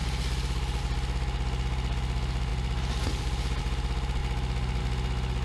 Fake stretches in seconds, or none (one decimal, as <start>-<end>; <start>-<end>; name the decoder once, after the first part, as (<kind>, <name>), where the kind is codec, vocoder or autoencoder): none